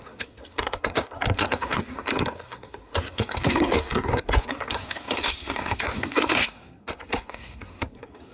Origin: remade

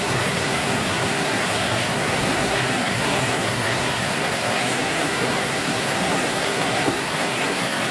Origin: remade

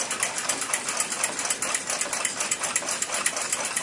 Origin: recorded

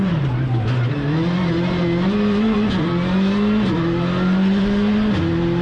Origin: recorded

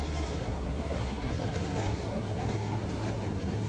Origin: remade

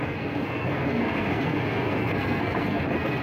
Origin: remade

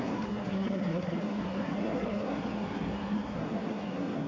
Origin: remade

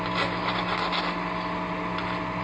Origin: recorded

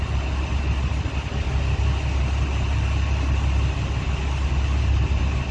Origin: recorded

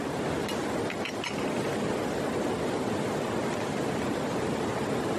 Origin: recorded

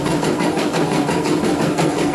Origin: remade